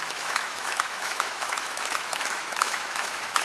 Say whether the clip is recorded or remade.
remade